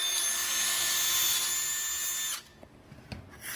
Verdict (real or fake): real